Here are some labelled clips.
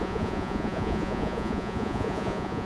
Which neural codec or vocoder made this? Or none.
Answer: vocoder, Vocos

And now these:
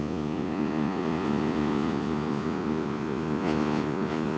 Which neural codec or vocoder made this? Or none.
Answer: vocoder, Vocos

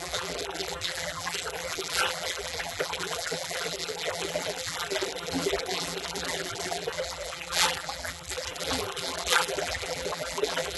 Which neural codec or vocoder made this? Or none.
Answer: vocoder, BigVGAN v2